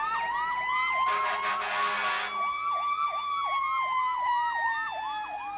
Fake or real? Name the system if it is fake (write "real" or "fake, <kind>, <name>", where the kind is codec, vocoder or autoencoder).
real